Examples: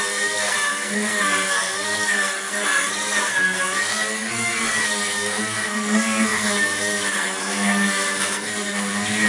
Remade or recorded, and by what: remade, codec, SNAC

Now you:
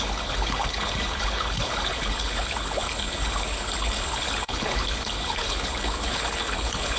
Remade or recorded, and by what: remade, codec, HILCodec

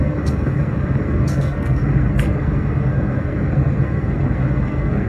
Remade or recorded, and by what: remade, codec, SNAC